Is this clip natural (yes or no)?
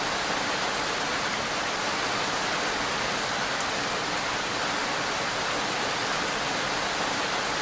yes